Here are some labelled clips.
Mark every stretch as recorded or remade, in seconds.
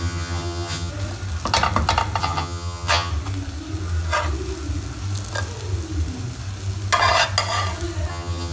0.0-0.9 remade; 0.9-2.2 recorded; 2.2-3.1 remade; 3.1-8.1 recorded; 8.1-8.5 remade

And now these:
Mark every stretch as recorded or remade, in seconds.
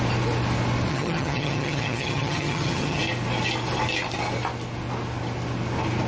0.0-0.9 recorded; 0.9-3.0 remade; 3.0-6.1 recorded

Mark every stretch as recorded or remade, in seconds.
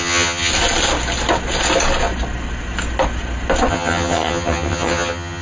0.0-0.5 remade; 0.5-3.7 recorded; 3.7-5.4 remade